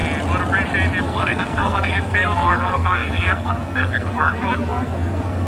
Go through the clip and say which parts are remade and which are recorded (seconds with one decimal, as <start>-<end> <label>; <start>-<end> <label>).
0.0-1.0 recorded; 1.0-5.5 remade